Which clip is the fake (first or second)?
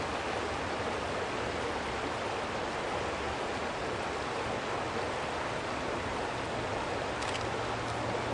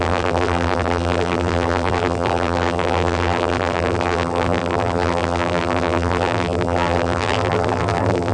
second